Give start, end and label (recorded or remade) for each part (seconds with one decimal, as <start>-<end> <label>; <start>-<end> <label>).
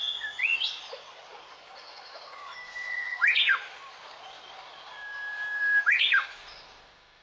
0.0-7.2 recorded